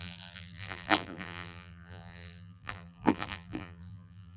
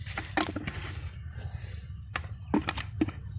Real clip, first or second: second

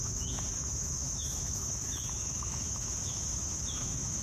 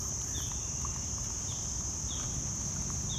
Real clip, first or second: second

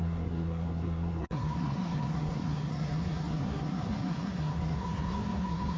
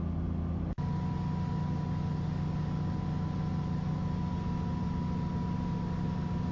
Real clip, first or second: second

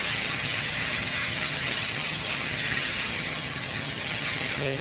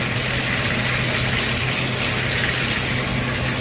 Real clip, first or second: second